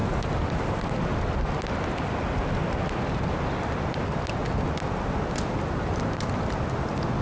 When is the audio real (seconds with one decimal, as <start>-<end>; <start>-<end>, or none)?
0.0-7.2